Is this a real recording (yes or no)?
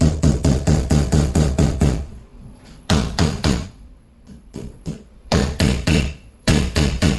no